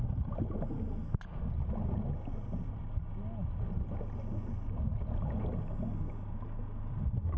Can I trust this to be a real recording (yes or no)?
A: yes